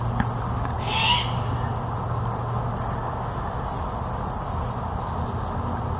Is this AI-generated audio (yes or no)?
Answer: no